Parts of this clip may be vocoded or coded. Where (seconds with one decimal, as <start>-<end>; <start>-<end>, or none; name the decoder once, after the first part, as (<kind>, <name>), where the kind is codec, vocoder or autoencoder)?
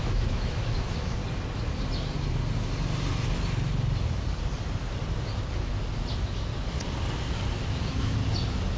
0.0-1.2 (autoencoder, DAC-VAE); 6.1-6.5; 7.7-8.2